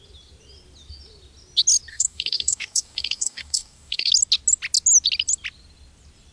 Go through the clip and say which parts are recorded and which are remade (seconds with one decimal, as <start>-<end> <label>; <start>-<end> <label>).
0.0-1.9 recorded; 1.9-4.1 remade; 4.1-6.3 recorded